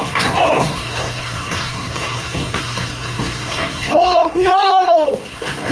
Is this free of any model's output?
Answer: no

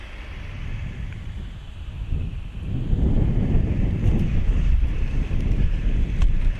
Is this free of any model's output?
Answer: no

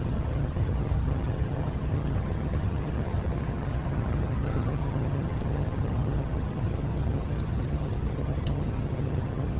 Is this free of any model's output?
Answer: no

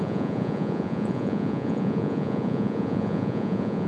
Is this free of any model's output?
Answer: no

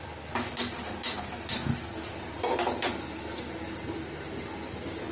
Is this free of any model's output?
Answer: yes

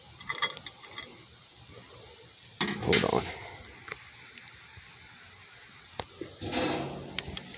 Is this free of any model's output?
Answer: yes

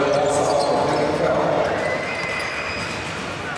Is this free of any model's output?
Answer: yes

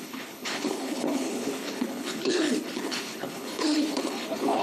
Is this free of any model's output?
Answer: no